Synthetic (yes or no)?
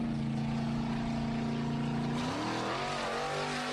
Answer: no